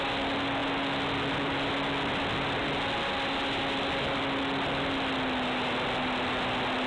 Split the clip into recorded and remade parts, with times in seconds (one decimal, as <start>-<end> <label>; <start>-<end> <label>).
0.0-6.9 recorded